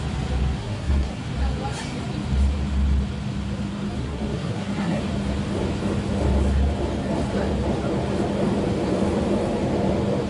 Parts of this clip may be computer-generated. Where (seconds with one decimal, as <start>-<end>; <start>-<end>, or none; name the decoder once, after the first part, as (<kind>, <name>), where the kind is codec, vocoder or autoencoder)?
0.6-1.2 (codec, SNAC); 4.0-5.0